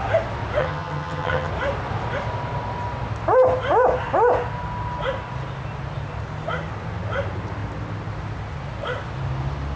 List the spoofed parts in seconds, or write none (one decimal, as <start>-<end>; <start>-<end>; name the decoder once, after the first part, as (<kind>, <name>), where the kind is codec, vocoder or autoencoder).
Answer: 0.6-1.5 (vocoder, HiFi-GAN)